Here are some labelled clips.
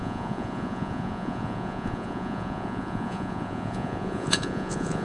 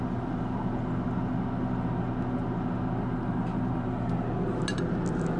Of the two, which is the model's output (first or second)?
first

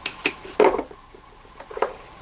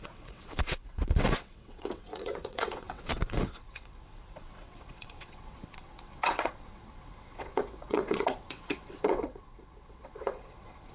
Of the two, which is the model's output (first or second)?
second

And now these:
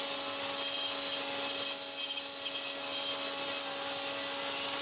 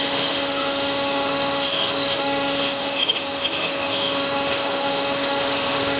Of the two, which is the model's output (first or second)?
second